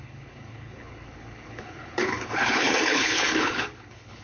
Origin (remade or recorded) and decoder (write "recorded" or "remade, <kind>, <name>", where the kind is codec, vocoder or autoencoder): remade, codec, HILCodec